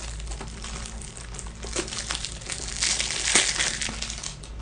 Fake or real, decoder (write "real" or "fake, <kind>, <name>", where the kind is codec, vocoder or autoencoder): real